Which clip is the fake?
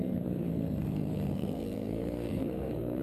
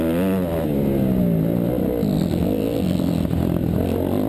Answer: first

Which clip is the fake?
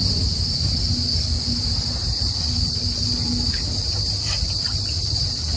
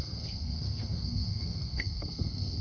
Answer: second